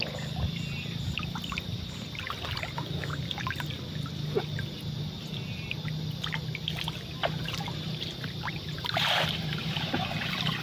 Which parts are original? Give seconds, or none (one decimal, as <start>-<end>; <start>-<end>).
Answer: 0.0-7.2; 9.9-10.6